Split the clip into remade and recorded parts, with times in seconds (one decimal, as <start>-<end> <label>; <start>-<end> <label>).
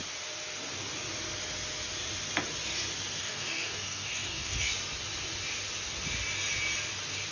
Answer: 0.0-3.2 recorded; 3.2-4.7 remade; 4.7-7.3 recorded